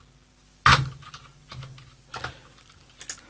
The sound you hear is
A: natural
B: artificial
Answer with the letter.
A